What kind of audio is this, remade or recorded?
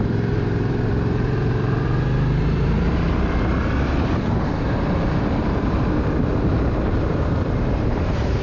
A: remade